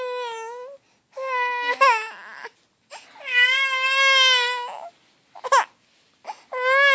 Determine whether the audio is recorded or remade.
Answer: recorded